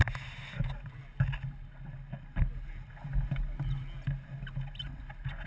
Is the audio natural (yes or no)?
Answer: yes